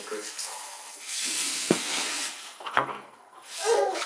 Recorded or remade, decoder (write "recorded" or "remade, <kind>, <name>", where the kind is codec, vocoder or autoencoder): remade, codec, SNAC